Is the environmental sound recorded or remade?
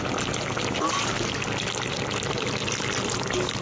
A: recorded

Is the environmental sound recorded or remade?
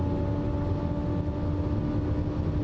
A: recorded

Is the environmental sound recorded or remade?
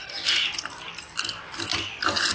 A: recorded